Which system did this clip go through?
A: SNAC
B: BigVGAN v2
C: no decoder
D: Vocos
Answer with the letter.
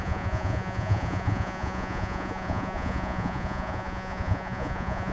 D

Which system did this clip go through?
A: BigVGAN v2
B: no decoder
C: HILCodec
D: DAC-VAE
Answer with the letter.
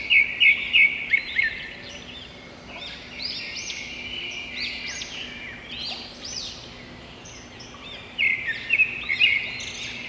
B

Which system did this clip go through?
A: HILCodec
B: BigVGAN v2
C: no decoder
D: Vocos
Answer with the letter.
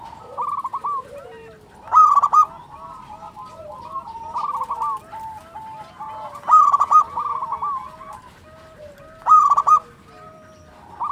C